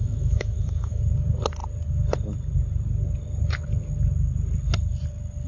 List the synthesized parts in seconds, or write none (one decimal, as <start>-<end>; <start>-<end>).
0.0-1.0

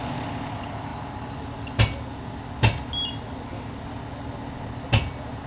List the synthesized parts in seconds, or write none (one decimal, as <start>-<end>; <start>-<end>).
none

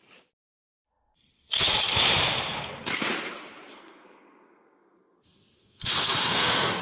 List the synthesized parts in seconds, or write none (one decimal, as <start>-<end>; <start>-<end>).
3.7-6.8

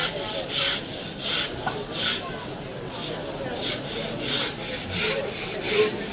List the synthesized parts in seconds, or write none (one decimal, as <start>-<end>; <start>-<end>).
none

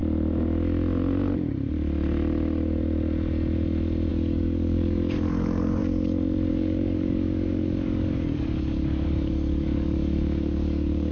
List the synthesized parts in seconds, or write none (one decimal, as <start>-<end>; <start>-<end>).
4.1-5.8; 6.5-11.1